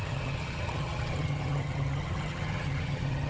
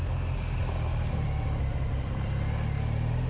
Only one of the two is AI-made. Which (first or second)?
first